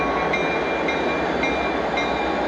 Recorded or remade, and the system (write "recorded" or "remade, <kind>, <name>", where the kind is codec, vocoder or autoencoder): recorded